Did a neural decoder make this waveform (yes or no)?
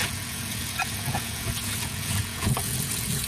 yes